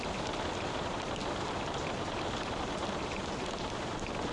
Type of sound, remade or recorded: recorded